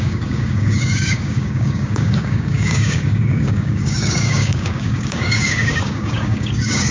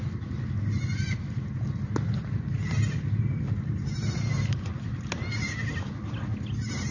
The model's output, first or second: first